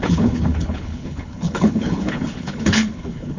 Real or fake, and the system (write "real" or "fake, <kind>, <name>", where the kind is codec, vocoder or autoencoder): fake, codec, HILCodec